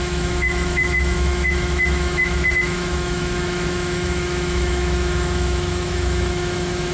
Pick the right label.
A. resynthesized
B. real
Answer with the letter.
A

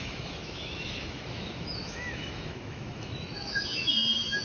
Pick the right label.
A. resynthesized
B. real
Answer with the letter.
A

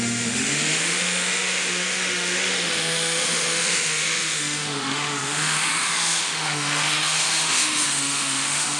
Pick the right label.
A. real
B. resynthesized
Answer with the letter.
B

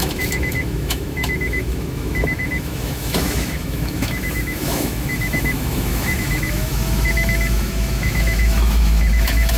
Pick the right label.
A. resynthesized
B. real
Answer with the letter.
A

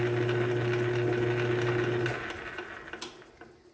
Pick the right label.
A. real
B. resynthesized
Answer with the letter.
A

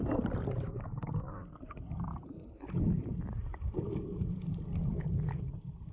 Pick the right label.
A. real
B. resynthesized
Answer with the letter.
A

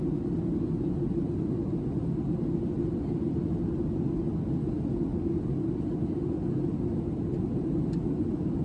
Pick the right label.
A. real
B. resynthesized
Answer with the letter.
A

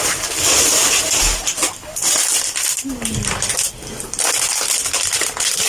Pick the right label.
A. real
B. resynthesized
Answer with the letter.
A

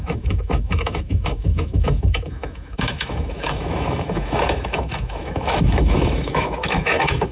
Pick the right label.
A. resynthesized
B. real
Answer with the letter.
A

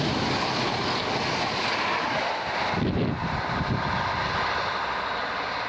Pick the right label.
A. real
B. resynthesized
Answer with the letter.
A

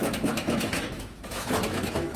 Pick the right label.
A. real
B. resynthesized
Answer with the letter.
B